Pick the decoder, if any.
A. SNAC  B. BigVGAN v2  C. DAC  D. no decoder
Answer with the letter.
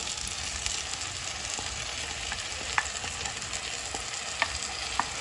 D